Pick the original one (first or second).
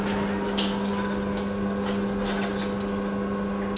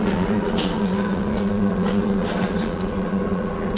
first